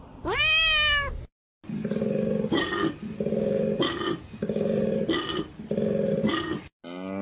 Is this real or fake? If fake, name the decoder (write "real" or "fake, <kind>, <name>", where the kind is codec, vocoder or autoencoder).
real